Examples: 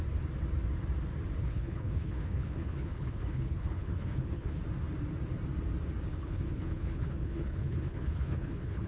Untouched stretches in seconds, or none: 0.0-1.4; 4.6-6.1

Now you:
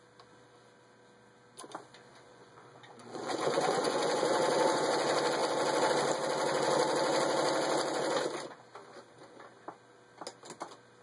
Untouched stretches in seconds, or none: 0.0-2.3; 4.9-11.0

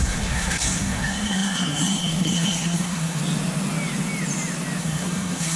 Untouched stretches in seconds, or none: 3.2-4.8

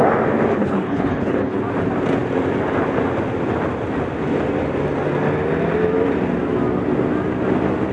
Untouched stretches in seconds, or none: 0.0-0.5; 1.6-7.9

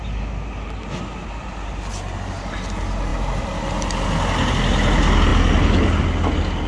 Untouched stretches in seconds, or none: 0.0-6.7

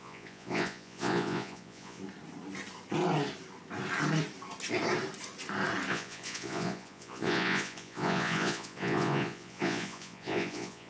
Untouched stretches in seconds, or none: 2.0-5.9